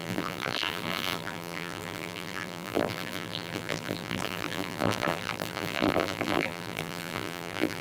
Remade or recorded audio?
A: remade